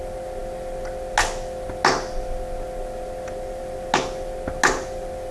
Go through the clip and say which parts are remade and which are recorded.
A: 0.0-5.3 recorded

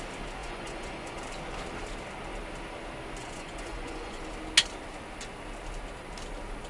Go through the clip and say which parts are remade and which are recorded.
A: 0.0-0.4 recorded; 0.4-1.2 remade; 1.2-3.2 recorded; 3.2-4.2 remade; 4.2-6.7 recorded